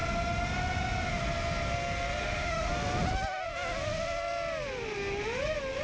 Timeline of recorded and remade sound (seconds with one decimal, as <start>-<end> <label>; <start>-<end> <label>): 0.0-2.2 recorded; 2.2-2.7 remade; 2.7-5.8 recorded